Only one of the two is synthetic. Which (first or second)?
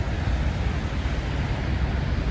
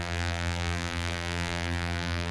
second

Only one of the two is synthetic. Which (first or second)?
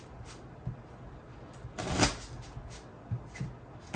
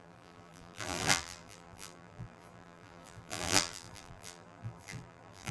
second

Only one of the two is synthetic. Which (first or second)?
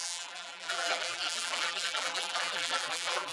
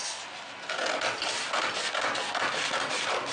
first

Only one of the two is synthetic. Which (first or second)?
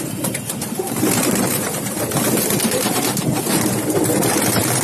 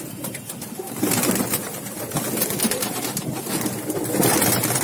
first